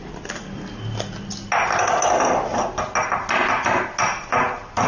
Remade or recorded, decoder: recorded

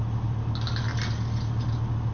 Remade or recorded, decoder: recorded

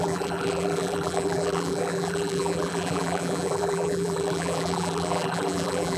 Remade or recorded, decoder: remade, vocoder, BigVGAN v2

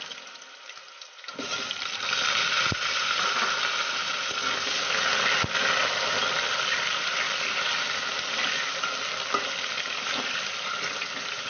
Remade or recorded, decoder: recorded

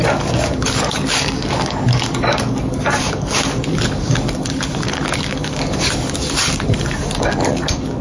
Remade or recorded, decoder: remade, codec, DAC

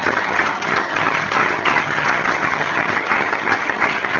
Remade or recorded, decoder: remade, vocoder, HiFi-GAN